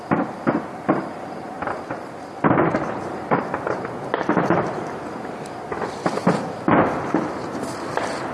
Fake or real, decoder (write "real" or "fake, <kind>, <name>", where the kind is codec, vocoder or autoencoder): real